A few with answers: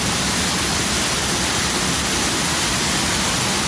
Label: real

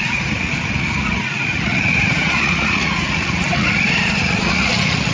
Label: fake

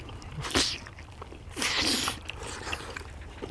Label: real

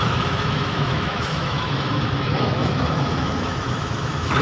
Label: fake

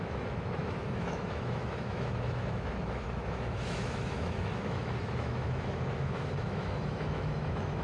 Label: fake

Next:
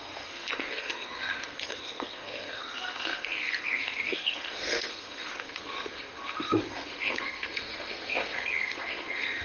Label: fake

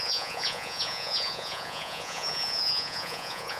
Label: fake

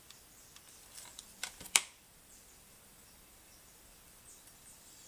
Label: fake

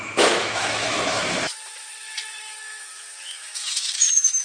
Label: fake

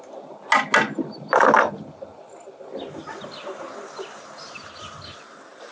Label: real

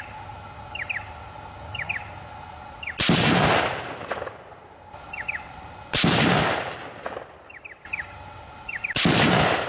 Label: real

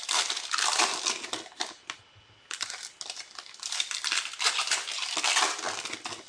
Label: real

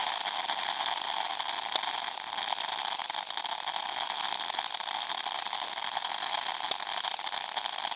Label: real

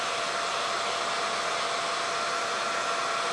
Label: real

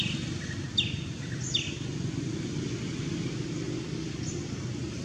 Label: real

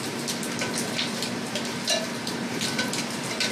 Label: real